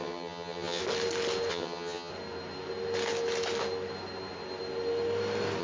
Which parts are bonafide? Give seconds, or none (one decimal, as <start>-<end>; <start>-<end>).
0.8-1.5; 2.1-5.6